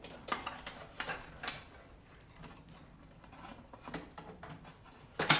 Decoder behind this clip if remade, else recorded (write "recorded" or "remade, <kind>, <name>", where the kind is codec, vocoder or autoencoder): recorded